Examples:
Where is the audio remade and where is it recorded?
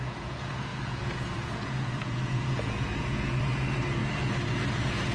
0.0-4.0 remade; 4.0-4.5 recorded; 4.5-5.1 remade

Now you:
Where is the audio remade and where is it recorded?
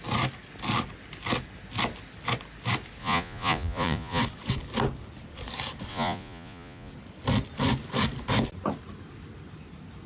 0.0-3.0 recorded; 3.0-4.2 remade; 4.2-5.9 recorded; 5.9-6.9 remade; 6.9-10.1 recorded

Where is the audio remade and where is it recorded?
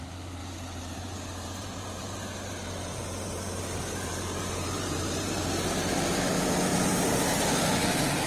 0.0-0.4 recorded; 0.4-5.4 remade; 5.4-8.3 recorded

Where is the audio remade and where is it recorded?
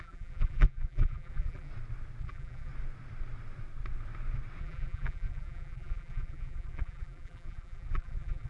0.0-1.7 remade; 1.7-2.2 recorded; 2.2-2.7 remade; 2.7-4.6 recorded; 4.6-8.5 remade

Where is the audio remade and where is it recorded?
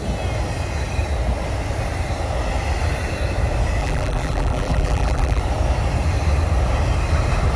0.0-3.8 recorded; 3.8-5.4 remade; 5.4-7.6 recorded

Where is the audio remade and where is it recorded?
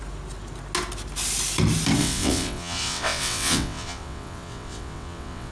0.0-2.0 recorded; 2.0-5.5 remade